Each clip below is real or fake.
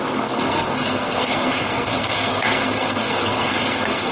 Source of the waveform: fake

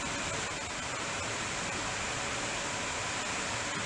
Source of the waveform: real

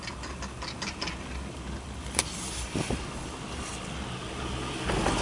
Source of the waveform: real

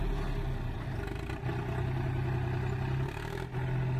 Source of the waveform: real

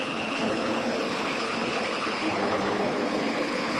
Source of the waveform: fake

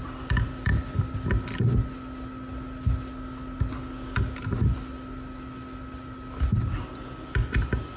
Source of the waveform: real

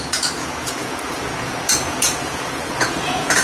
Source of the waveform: fake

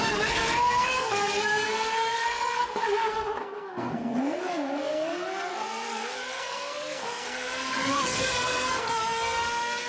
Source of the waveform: fake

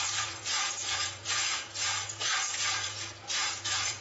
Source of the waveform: fake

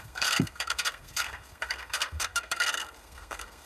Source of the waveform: fake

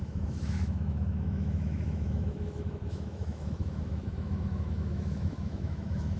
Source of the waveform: fake